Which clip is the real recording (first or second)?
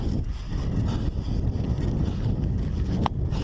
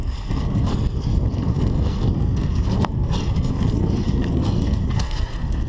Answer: first